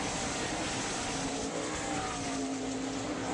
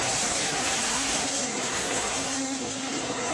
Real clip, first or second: first